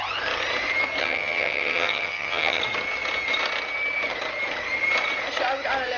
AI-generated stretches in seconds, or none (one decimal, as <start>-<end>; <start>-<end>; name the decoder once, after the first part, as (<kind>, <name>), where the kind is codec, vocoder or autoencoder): 1.0-2.6 (vocoder, HiFi-GAN)